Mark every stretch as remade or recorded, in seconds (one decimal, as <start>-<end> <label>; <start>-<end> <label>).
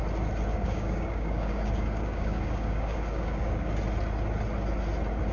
0.0-0.5 recorded; 0.5-3.7 remade; 3.7-5.3 recorded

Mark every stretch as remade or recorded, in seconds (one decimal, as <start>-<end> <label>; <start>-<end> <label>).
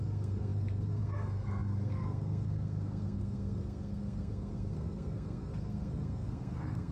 0.0-6.9 remade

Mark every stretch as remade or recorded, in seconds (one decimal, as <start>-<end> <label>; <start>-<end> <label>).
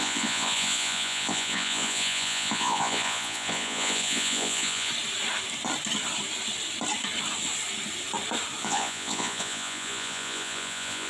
0.0-4.9 remade; 4.9-8.6 recorded; 8.6-11.1 remade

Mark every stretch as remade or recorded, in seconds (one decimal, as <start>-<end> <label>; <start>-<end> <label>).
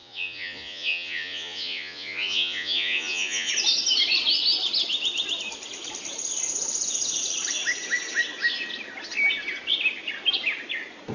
0.0-3.5 remade; 3.5-11.1 recorded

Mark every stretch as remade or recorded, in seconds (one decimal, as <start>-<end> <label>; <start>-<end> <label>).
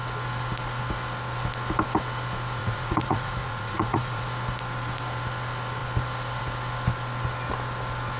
0.0-2.6 recorded; 2.6-4.2 remade; 4.2-8.2 recorded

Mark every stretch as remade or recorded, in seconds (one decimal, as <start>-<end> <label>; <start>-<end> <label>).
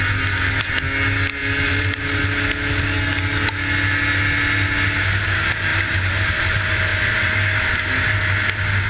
0.0-1.4 recorded; 1.4-2.2 remade; 2.2-5.7 recorded; 5.7-6.4 remade; 6.4-8.9 recorded